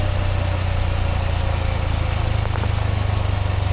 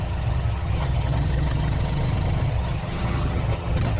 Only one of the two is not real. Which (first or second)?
second